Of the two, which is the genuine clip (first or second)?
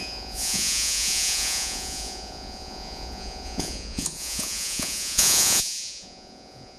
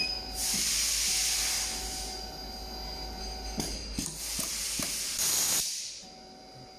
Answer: second